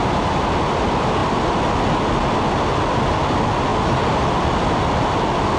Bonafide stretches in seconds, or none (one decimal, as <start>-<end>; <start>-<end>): 0.0-5.6